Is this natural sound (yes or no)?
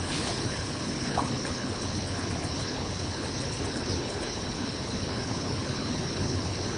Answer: no